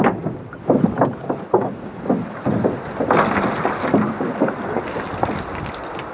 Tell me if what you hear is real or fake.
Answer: real